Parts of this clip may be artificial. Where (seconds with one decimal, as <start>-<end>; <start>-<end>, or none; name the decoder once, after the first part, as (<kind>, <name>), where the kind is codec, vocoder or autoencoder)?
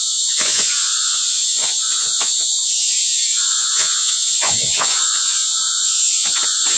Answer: 0.0-6.8 (vocoder, Vocos)